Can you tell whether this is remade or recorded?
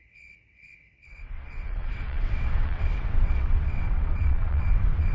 remade